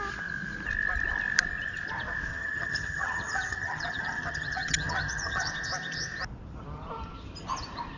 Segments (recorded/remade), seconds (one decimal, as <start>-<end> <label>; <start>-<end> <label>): 0.0-2.3 recorded; 2.3-5.5 remade; 5.5-8.0 recorded